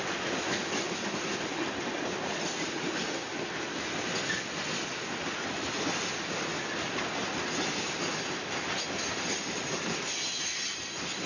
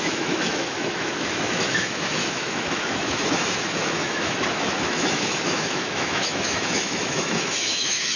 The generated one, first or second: second